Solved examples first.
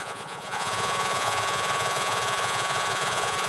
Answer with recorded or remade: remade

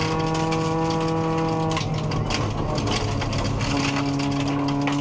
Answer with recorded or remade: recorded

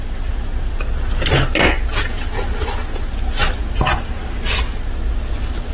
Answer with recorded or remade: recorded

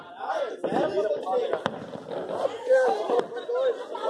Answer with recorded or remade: recorded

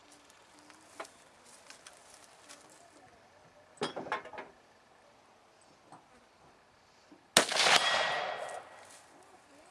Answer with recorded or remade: recorded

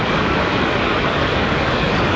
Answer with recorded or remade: remade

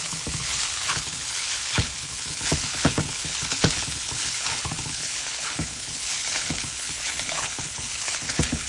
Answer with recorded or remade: remade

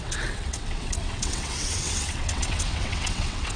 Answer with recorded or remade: remade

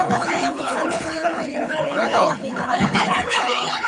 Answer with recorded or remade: remade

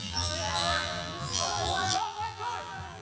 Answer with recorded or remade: remade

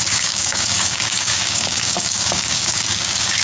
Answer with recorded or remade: remade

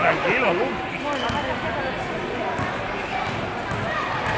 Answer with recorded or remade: recorded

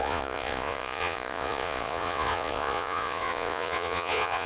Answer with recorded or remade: remade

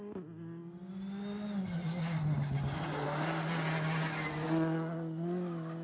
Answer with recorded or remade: recorded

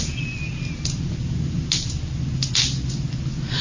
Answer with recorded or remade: recorded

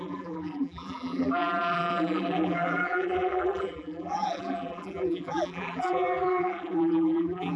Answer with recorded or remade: remade